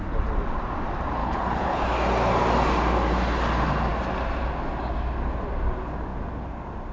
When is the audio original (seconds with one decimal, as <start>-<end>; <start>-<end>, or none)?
0.0-1.2; 1.8-6.9